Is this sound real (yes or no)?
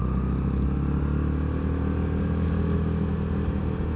yes